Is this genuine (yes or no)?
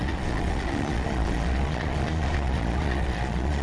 no